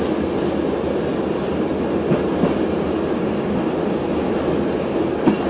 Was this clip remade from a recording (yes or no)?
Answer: no